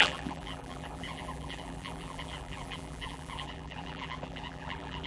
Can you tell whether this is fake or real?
fake